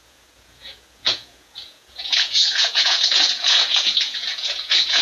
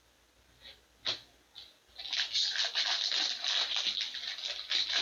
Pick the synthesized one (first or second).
first